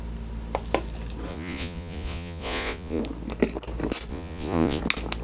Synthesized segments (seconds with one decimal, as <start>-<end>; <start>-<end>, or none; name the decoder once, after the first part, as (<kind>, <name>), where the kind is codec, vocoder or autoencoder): 1.3-3.0 (vocoder, Vocos); 4.1-4.8